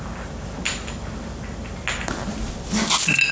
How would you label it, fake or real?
real